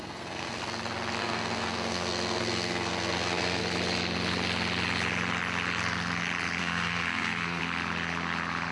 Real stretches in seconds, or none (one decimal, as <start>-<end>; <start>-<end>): 0.6-1.2; 3.6-6.6; 7.6-8.7